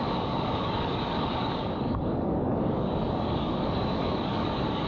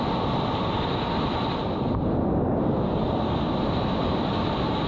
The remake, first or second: first